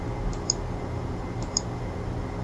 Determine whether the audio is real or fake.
real